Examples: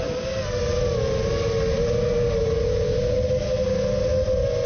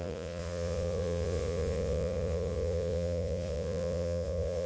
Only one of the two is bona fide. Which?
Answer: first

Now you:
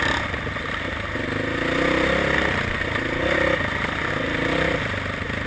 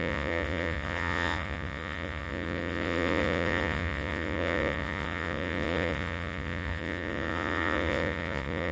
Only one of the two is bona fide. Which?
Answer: first